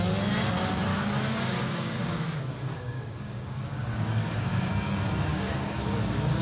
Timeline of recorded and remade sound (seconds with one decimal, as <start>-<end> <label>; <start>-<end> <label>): 0.0-0.9 recorded; 0.9-4.7 remade; 4.7-5.3 recorded; 5.3-6.4 remade